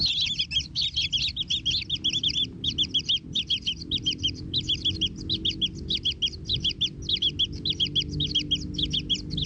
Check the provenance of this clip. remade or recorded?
recorded